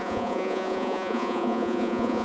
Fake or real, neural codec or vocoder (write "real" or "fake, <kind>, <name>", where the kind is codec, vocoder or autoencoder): fake, vocoder, Vocos